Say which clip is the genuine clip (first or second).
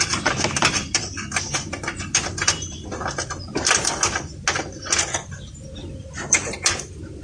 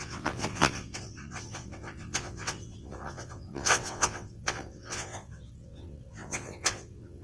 first